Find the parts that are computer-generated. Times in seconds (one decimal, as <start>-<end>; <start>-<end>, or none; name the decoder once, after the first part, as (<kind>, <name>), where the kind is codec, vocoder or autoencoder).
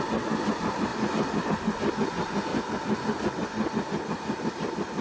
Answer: 0.9-1.5 (vocoder, BigVGAN v2)